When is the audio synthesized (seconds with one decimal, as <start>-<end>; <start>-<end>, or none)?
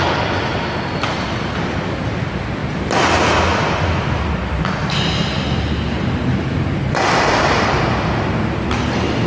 none